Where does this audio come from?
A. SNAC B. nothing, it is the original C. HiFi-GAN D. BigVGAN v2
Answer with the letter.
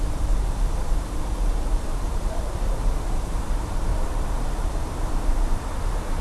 D